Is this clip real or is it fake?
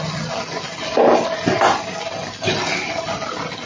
real